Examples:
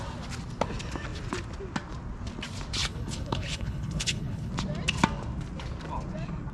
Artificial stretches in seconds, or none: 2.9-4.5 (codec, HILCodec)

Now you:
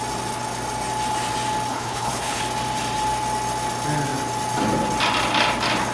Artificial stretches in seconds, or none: 1.7-2.4 (codec, HILCodec)

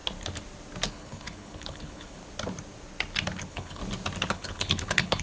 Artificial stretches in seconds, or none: 0.9-2.2 (codec, HILCodec); 3.4-3.8; 4.3-5.2

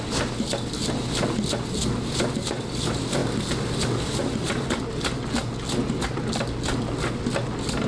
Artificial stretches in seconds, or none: none

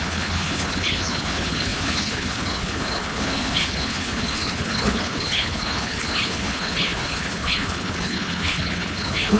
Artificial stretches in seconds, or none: 0.0-9.4 (codec, HILCodec)

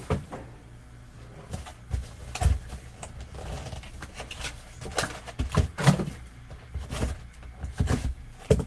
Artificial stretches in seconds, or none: none

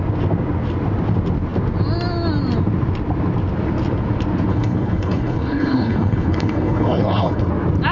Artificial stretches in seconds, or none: 4.5-7.5 (codec, HILCodec)

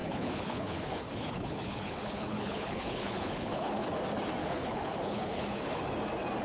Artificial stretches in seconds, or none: 0.0-3.8 (codec, HILCodec); 4.4-5.8